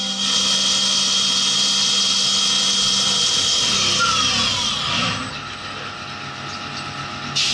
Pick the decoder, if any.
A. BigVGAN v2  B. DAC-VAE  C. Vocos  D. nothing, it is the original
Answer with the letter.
D